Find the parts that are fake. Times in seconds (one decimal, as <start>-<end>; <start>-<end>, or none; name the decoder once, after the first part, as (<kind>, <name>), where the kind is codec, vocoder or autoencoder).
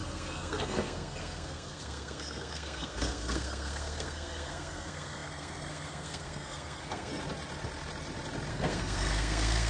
0.0-7.1 (codec, SNAC); 8.5-9.7